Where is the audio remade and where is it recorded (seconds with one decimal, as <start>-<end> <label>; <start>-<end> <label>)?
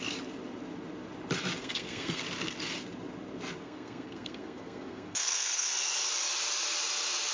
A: 0.0-1.6 recorded; 1.6-2.2 remade; 2.2-3.6 recorded; 3.6-5.7 remade; 5.7-7.3 recorded